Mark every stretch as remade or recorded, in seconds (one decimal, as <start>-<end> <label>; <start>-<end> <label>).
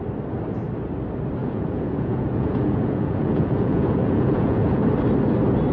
0.0-1.4 recorded; 1.4-4.8 remade; 4.8-5.7 recorded